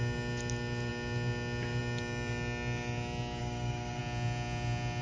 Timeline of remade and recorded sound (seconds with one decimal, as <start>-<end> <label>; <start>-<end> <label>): 0.0-3.4 recorded; 3.4-4.0 remade; 4.0-5.0 recorded